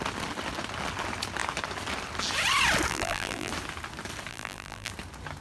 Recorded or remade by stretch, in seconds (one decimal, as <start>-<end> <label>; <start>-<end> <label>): 0.0-2.9 recorded; 2.9-3.5 remade; 3.5-4.3 recorded; 4.3-4.9 remade; 4.9-5.4 recorded